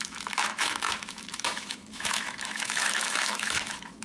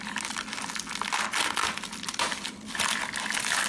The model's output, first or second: first